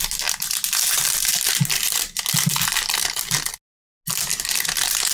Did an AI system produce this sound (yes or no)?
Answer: no